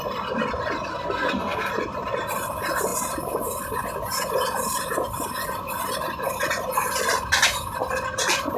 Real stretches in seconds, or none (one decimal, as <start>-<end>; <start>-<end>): 0.0-0.9; 1.7-8.6